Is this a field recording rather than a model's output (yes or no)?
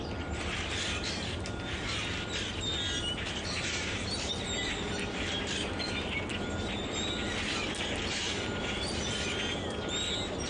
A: yes